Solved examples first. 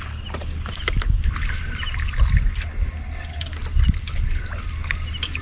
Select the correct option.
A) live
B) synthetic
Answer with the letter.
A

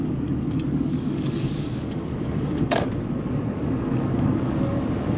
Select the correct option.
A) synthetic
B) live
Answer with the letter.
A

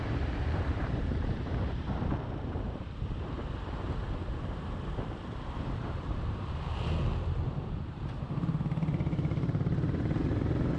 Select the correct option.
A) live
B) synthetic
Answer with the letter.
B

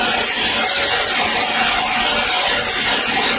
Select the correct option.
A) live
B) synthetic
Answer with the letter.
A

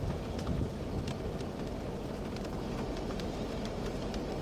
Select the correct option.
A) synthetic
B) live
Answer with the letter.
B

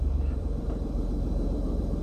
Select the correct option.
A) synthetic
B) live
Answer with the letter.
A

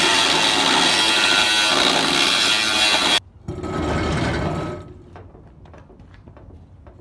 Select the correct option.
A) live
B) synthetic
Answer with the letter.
A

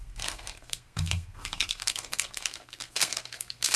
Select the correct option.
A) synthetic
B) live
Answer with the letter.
A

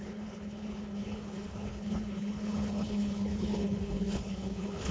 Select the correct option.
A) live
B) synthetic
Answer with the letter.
B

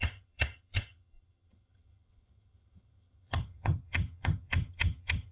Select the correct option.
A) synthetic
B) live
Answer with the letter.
A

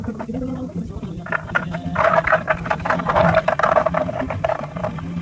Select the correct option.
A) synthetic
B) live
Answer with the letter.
B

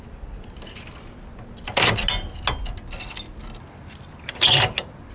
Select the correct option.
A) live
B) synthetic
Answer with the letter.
A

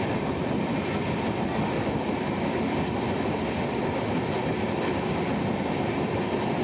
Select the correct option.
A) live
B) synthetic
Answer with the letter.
A